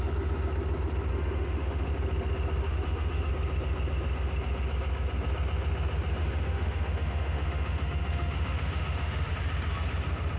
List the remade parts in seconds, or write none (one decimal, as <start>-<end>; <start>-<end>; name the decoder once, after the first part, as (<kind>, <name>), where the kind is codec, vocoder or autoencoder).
1.1-1.9 (autoencoder, DAC-VAE); 2.6-3.3; 6.2-9.3